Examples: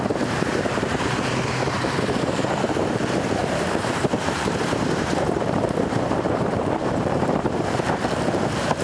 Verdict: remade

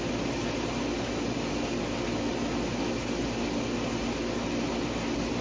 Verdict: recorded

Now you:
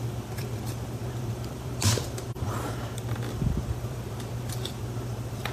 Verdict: remade